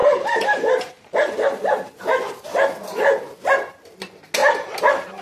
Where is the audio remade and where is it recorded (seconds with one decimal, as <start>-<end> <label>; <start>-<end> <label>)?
0.0-1.9 remade; 1.9-5.2 recorded

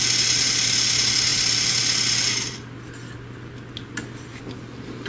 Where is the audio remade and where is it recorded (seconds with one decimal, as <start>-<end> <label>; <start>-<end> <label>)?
0.0-5.1 recorded